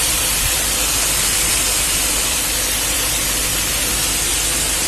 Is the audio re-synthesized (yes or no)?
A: yes